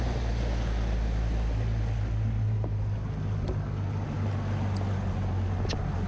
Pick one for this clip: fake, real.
real